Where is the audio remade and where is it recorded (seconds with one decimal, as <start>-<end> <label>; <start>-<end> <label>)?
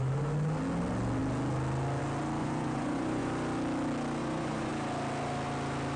0.0-2.4 recorded; 2.4-3.3 remade; 3.3-4.2 recorded; 4.2-4.7 remade; 4.7-6.0 recorded